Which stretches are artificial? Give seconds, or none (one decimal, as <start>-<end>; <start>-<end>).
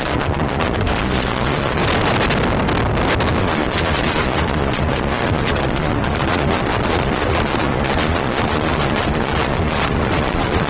0.0-1.8; 3.4-10.7